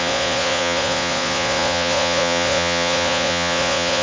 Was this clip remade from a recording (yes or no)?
yes